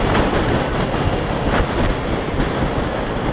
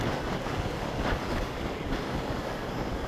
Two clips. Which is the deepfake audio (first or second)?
second